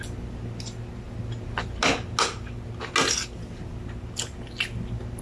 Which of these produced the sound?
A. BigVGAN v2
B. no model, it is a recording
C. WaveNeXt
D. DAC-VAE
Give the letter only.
B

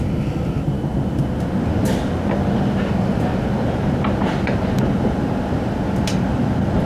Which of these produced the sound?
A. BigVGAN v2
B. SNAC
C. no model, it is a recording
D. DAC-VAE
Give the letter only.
C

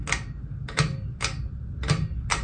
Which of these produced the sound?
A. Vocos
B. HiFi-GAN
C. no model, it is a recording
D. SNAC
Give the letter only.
C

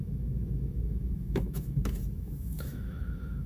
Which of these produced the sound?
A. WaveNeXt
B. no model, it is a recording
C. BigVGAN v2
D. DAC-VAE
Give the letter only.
D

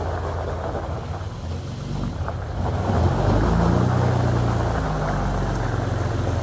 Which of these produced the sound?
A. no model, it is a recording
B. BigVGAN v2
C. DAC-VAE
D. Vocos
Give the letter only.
A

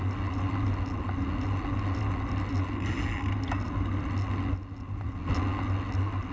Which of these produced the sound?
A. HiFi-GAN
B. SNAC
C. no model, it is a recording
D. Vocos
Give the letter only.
C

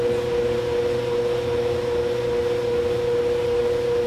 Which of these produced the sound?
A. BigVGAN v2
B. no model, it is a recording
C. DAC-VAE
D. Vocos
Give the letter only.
B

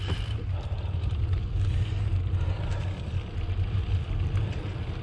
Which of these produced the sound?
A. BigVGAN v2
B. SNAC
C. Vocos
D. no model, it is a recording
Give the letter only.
A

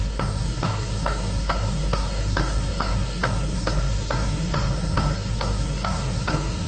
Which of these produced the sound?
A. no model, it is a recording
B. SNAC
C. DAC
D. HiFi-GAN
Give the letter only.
B